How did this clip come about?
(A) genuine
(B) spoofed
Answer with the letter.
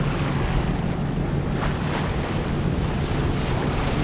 A